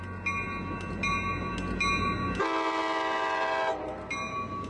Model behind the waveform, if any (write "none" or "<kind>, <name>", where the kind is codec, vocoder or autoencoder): none